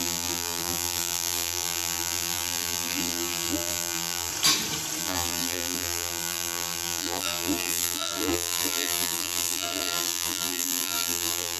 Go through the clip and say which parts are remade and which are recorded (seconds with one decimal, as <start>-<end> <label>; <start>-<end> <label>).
0.0-4.3 remade; 4.3-5.0 recorded; 5.0-11.6 remade